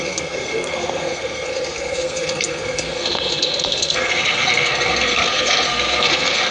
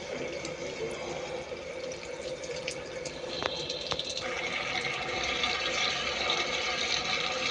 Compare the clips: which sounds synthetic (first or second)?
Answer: first